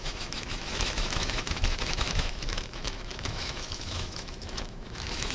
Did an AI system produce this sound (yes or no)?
yes